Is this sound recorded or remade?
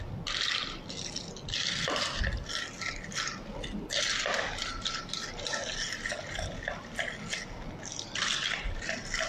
recorded